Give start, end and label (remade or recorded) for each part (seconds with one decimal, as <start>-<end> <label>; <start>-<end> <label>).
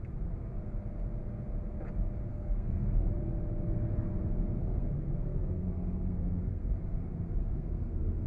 0.0-2.3 recorded; 2.3-3.3 remade; 3.3-4.6 recorded; 4.6-6.7 remade; 6.7-7.4 recorded; 7.4-8.3 remade